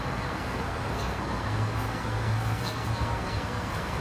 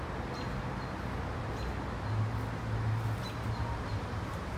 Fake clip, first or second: first